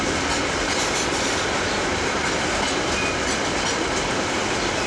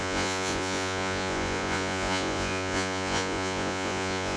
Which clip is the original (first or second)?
first